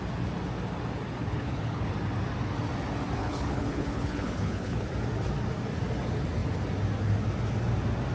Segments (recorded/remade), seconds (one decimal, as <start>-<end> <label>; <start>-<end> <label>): 0.0-1.2 recorded; 1.2-1.9 remade; 1.9-3.2 recorded; 3.2-4.8 remade; 4.8-8.1 recorded